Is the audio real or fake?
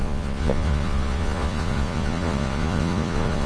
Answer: fake